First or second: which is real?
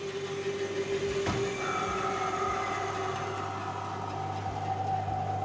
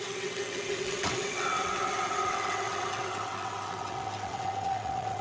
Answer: first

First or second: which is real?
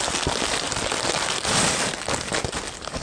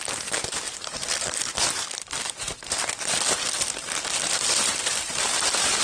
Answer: first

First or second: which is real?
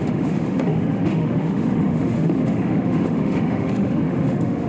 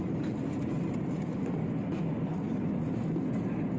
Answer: second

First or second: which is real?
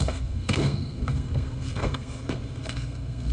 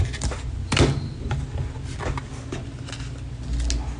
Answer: second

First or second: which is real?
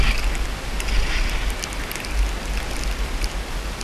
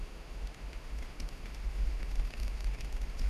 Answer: first